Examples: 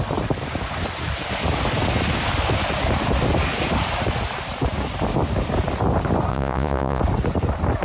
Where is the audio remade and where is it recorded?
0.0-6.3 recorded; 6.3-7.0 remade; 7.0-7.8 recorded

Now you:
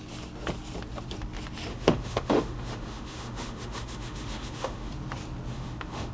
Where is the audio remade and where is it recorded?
0.0-1.7 recorded; 1.7-4.9 remade; 4.9-5.5 recorded; 5.5-6.1 remade

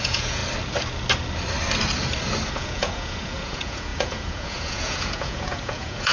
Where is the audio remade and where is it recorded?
0.0-0.4 remade; 0.4-2.5 recorded; 2.5-6.1 remade

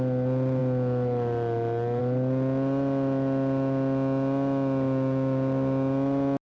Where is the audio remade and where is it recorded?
0.0-6.5 recorded

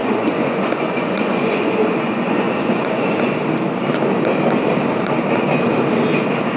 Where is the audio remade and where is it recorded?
0.0-3.3 remade; 3.3-6.6 recorded

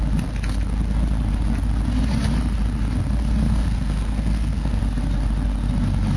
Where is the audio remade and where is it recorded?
0.0-3.4 recorded; 3.4-4.8 remade; 4.8-6.2 recorded

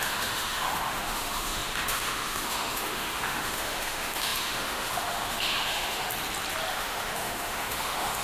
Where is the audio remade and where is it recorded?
0.0-6.1 remade; 6.1-6.7 recorded; 6.7-8.2 remade

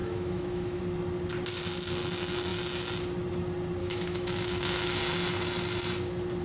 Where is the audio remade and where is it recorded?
0.0-0.8 remade; 0.8-3.8 recorded; 3.8-5.0 remade; 5.0-6.4 recorded